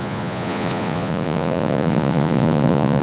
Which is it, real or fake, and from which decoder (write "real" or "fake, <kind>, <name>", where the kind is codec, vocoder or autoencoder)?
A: fake, vocoder, Vocos